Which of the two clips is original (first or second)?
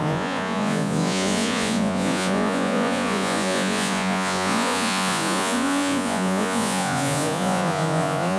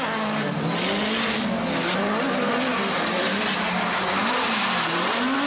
second